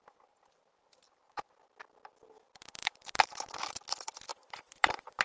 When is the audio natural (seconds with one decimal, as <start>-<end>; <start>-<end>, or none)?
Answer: 0.8-3.9

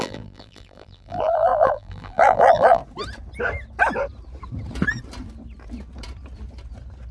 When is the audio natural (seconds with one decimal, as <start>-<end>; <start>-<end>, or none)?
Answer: 2.8-7.1

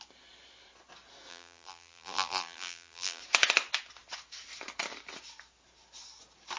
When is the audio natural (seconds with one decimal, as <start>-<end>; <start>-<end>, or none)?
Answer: 0.0-1.3; 3.2-6.6